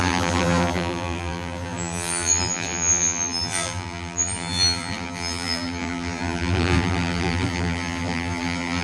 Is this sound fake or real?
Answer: fake